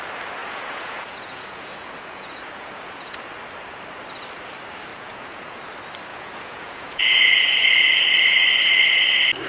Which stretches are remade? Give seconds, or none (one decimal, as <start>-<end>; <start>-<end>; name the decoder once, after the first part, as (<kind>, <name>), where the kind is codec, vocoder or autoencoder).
0.4-3.3 (vocoder, Vocos); 4.9-5.6; 6.1-7.3